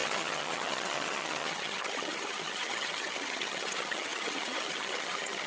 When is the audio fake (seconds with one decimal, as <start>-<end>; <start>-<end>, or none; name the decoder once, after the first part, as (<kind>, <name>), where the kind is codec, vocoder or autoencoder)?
0.0-5.5 (vocoder, HiFi-GAN)